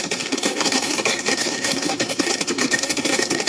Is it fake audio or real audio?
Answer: fake